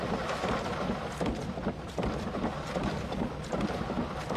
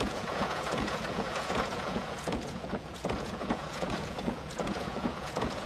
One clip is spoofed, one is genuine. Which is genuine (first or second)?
first